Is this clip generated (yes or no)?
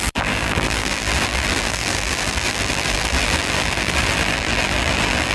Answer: yes